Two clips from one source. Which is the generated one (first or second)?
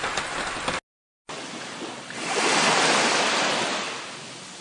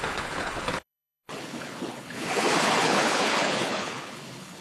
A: second